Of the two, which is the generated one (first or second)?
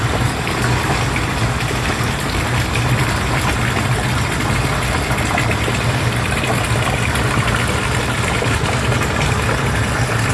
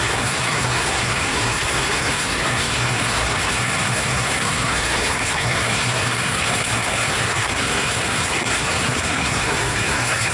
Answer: second